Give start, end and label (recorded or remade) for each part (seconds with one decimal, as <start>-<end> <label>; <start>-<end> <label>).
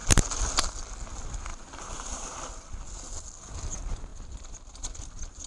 0.0-1.5 recorded; 1.5-2.2 remade; 2.2-5.5 recorded